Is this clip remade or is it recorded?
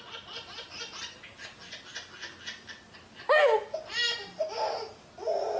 recorded